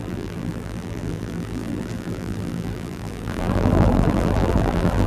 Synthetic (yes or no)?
yes